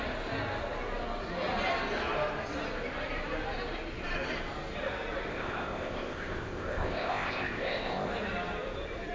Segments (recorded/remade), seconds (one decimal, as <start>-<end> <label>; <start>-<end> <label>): 0.0-5.3 recorded; 5.3-8.1 remade; 8.1-9.1 recorded